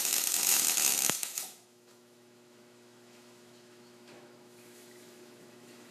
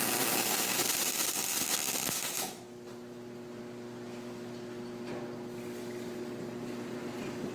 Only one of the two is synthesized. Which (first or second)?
first